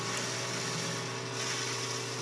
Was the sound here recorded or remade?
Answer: recorded